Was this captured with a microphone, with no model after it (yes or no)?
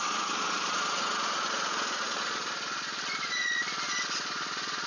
no